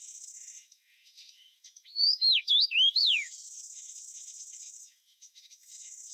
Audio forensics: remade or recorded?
remade